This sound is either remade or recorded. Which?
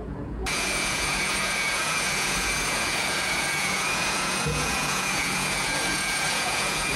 remade